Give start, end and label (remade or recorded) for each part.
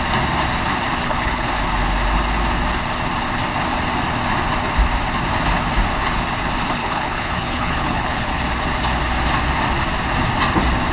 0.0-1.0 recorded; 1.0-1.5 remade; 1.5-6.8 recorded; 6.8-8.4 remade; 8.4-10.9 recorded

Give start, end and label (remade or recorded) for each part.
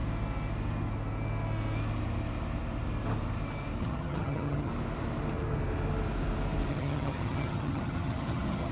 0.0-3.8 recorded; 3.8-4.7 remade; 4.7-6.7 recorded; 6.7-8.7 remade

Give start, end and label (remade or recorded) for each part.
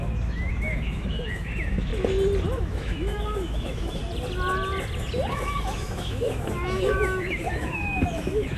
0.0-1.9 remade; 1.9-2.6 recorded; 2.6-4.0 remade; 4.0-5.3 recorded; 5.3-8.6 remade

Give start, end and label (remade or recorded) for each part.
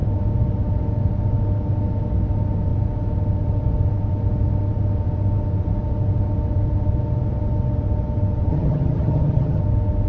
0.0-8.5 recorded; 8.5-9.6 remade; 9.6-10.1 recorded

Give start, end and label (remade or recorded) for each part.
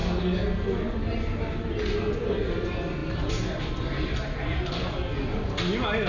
0.0-6.1 recorded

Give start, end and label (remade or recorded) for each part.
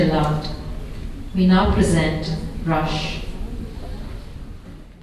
0.0-5.0 recorded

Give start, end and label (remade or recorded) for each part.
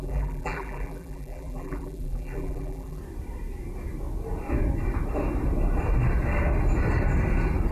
0.0-3.0 remade; 3.0-7.7 recorded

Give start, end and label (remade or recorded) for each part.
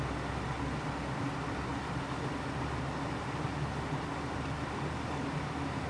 0.0-5.9 recorded